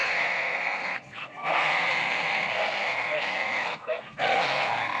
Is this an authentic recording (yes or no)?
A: no